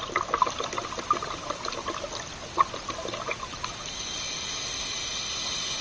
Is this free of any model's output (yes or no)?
yes